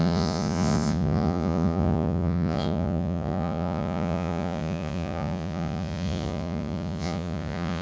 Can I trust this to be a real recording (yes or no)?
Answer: no